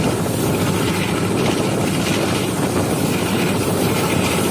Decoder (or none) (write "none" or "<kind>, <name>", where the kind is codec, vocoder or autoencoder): none